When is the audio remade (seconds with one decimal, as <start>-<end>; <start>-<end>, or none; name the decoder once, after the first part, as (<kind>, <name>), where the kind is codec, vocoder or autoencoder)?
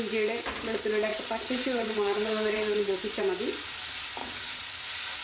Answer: 1.1-3.2 (vocoder, WaveNeXt); 4.2-4.7